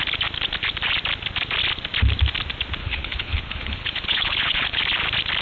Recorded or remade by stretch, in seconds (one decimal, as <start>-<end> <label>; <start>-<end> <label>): 0.0-2.8 recorded; 2.8-4.8 remade; 4.8-5.4 recorded